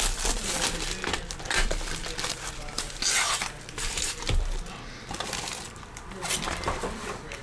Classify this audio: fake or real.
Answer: real